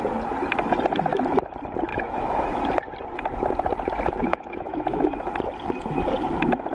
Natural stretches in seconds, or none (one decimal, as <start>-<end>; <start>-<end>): 0.0-1.9; 2.6-4.2; 5.3-6.7

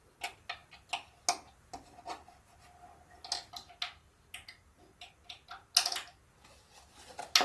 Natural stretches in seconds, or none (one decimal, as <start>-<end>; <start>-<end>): 0.0-7.4

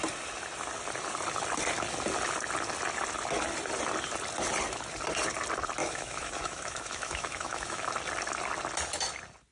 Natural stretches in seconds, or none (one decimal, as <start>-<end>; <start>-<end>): 0.0-5.8; 7.9-9.5

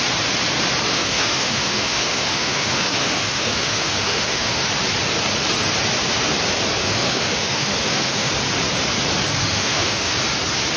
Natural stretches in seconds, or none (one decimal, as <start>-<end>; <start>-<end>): 0.0-0.9; 4.7-6.8; 8.3-9.4; 10.1-10.8